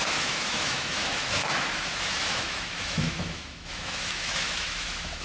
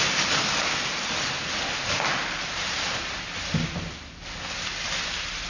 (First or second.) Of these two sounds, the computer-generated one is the first